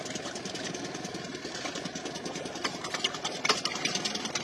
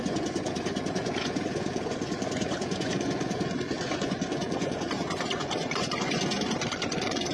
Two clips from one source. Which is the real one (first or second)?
first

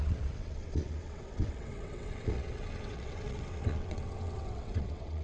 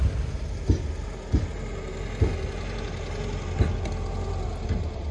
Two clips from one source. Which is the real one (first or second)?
second